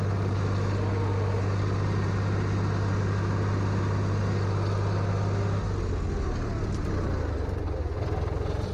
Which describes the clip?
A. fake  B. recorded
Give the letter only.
B